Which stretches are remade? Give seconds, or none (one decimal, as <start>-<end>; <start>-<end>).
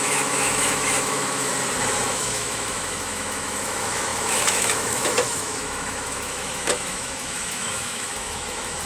0.0-1.5; 2.1-8.9